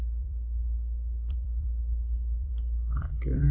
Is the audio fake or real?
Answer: fake